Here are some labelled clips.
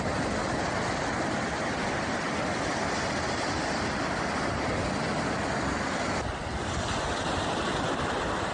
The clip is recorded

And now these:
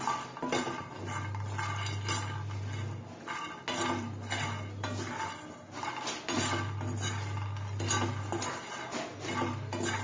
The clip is recorded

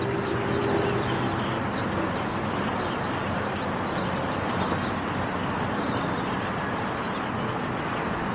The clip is recorded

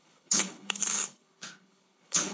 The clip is remade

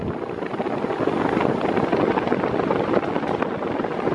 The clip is recorded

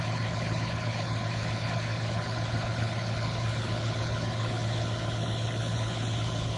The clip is remade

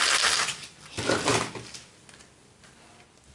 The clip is recorded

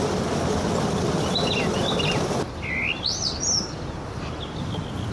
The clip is recorded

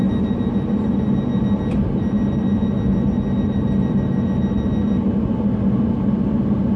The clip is recorded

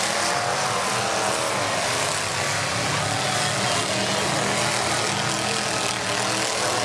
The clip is recorded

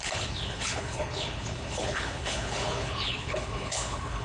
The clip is remade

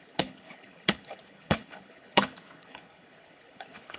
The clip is remade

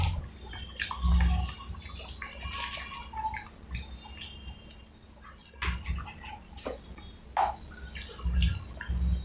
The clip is recorded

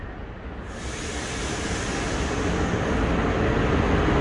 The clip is recorded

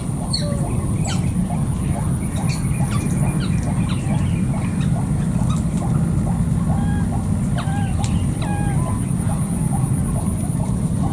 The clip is recorded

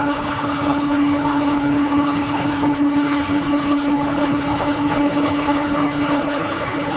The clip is remade